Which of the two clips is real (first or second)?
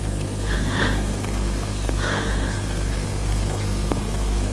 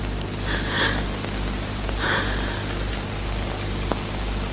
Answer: second